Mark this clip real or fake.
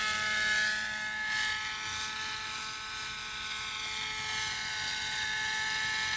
real